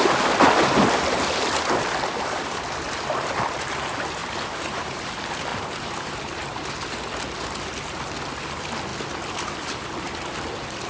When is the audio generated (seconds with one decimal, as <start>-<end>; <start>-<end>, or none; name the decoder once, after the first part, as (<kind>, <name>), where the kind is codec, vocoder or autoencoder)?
4.2-5.1 (vocoder, BigVGAN v2); 5.5-6.2